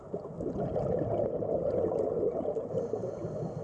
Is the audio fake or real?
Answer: real